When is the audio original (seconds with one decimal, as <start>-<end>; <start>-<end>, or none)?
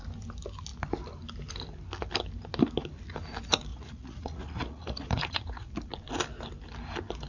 0.0-3.7; 5.7-7.3